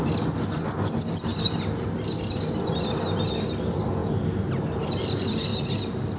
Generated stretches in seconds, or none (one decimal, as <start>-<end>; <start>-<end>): none